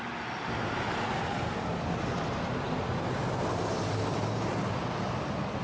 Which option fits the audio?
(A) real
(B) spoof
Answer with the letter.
A